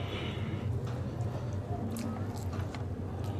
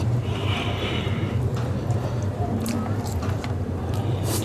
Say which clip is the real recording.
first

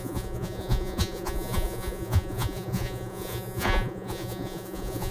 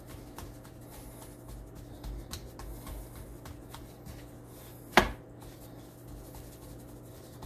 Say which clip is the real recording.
second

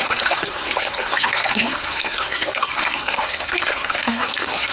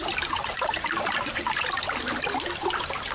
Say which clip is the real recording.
second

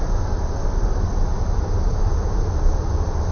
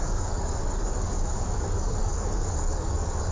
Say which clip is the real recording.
first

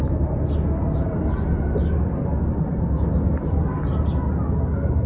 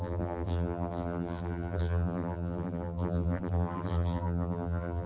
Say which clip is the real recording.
first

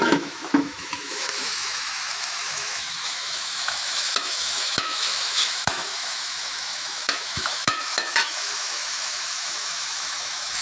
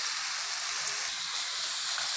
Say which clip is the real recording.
second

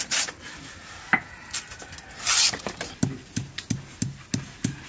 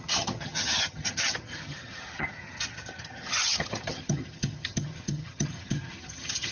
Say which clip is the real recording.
first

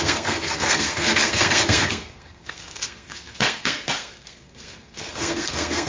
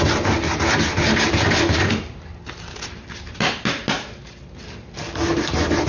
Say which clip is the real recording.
second